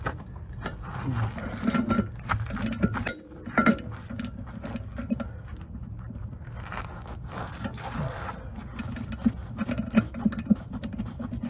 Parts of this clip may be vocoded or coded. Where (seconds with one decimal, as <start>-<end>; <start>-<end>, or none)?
none